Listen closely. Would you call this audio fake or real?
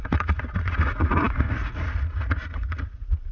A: fake